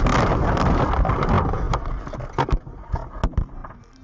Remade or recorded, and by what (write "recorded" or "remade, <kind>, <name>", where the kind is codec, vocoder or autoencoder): recorded